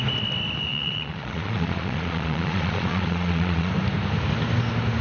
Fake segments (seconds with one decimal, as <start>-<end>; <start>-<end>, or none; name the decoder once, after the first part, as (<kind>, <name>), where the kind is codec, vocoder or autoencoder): 0.7-3.7 (vocoder, Vocos)